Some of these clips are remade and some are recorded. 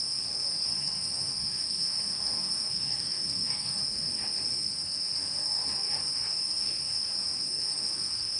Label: remade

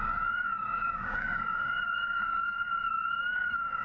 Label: remade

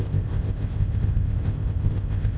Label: remade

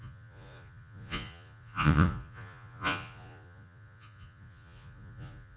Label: remade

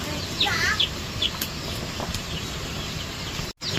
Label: recorded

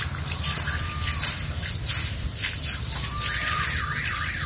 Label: recorded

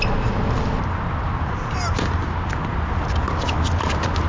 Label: recorded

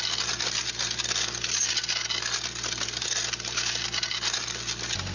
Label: recorded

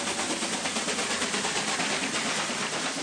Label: remade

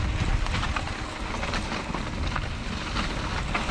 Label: recorded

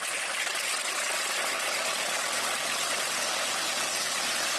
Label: recorded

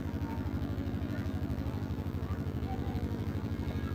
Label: remade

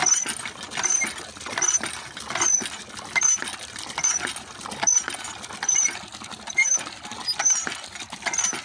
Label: recorded